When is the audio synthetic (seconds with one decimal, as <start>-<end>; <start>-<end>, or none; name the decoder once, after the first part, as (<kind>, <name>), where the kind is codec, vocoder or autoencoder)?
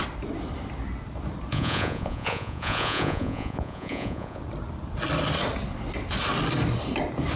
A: 1.5-4.4 (vocoder, Vocos)